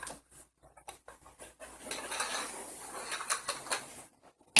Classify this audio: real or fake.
real